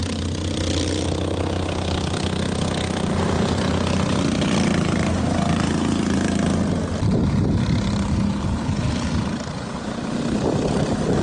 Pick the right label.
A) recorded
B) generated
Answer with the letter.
A